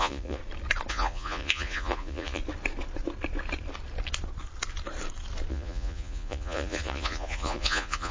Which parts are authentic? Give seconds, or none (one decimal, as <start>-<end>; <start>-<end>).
0.4-0.9; 2.4-5.5